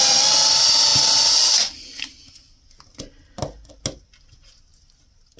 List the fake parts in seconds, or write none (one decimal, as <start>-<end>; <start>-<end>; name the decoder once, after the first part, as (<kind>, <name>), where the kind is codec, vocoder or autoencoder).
none